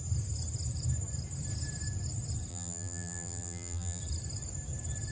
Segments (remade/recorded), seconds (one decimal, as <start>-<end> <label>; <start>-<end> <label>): 0.0-2.5 recorded; 2.5-4.0 remade; 4.0-5.1 recorded